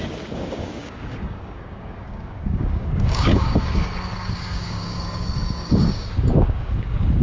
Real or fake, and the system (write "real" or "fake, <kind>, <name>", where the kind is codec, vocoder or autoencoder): fake, codec, DAC